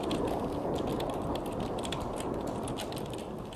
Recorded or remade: recorded